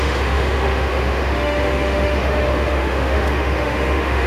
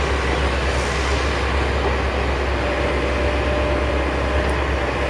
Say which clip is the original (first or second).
second